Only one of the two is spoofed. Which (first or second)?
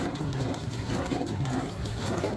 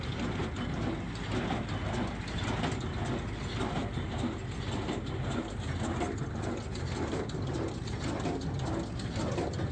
first